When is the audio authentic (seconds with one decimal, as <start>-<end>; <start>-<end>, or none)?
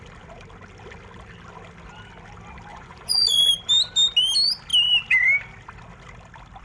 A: 0.0-2.7; 3.5-6.6